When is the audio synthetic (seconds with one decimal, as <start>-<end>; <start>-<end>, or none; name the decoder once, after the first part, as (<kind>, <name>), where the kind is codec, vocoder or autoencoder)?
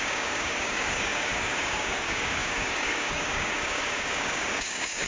0.0-5.1 (codec, DAC)